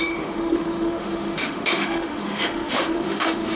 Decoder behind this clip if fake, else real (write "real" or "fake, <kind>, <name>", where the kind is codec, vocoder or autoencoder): fake, autoencoder, DAC-VAE